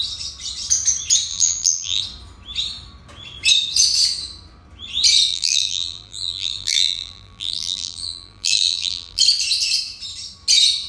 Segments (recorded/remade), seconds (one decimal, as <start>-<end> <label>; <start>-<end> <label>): 0.0-1.3 recorded; 1.3-2.0 remade; 2.0-5.3 recorded; 5.3-9.2 remade; 9.2-10.9 recorded